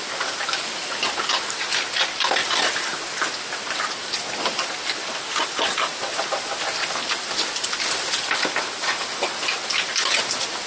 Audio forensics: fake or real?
real